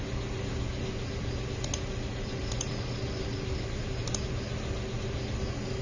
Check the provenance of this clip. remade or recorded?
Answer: recorded